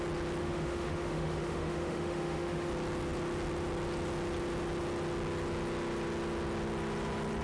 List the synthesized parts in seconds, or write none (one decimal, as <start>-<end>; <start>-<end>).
0.4-2.7